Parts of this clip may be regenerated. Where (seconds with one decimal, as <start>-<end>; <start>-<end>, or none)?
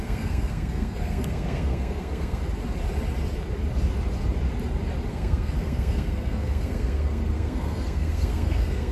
0.0-2.4; 5.1-8.9